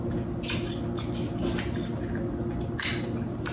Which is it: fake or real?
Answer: real